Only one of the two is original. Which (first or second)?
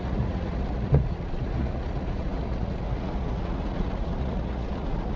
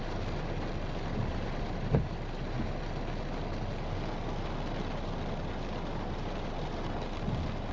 second